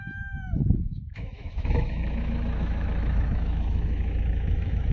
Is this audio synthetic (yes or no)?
yes